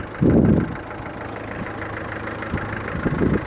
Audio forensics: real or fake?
real